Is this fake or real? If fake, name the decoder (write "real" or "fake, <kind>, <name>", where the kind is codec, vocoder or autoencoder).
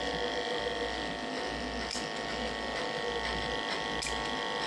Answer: real